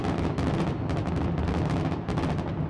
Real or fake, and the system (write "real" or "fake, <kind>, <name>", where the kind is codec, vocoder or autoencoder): real